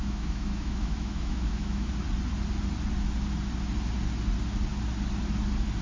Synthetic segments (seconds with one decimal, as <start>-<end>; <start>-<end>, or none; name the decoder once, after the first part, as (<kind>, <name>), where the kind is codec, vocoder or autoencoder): 0.0-1.9 (autoencoder, DAC-VAE)